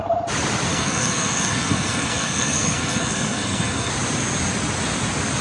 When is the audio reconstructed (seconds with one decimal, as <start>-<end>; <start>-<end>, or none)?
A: 0.7-3.9

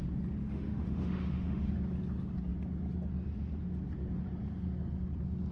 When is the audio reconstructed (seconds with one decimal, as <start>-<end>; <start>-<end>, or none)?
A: 0.4-1.7

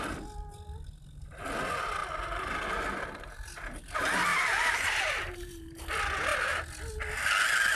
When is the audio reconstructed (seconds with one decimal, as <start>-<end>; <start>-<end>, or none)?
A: 4.3-5.8

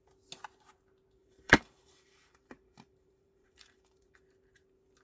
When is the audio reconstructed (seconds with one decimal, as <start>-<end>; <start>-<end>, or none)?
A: 1.2-4.2

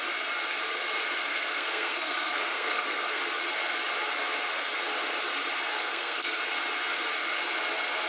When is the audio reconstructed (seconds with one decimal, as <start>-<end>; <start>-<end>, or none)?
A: 1.3-3.2; 5.7-6.4

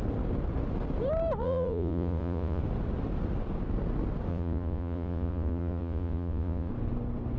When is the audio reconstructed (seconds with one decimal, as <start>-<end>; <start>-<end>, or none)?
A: 1.4-2.6; 4.3-6.7

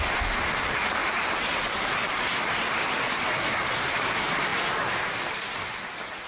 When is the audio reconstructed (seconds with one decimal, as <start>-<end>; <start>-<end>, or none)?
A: none

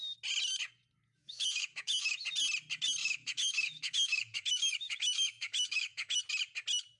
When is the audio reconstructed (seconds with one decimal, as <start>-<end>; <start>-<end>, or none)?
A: 1.2-2.2; 3.0-6.2